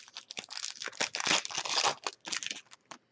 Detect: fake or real real